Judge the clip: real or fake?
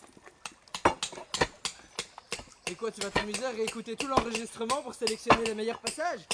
real